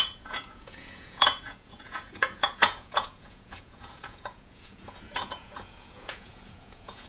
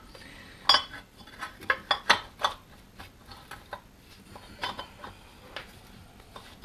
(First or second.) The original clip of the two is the second